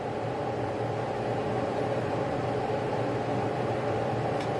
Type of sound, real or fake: real